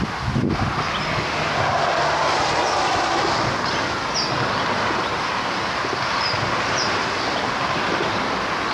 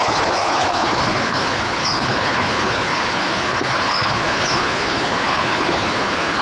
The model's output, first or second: second